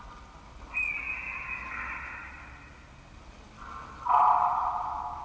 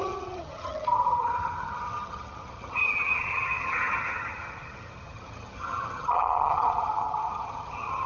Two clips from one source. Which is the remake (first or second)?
second